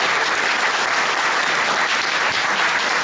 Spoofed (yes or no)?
no